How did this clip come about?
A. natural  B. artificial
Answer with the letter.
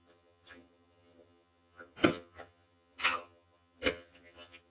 B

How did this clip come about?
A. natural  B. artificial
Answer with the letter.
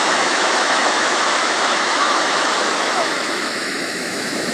B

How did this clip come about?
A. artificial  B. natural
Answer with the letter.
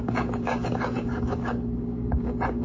A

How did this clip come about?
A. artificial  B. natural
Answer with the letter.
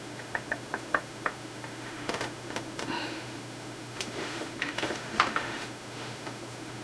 A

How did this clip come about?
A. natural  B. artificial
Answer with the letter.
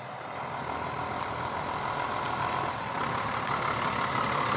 A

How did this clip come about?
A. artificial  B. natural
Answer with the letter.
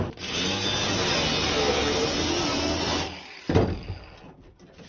B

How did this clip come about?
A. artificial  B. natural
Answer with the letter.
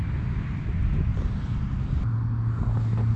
B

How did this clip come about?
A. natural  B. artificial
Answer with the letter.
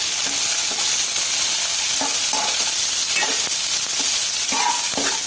A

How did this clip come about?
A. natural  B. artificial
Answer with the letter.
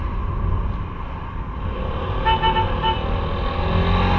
A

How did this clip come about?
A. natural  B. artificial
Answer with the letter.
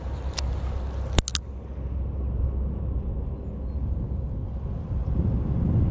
A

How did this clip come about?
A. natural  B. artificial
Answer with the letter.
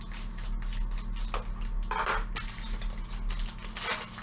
A